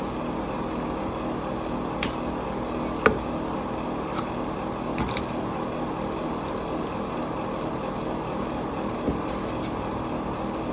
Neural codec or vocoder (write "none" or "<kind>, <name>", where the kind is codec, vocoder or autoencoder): none